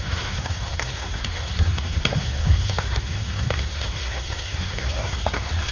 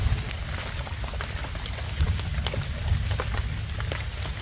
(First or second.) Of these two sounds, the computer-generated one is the first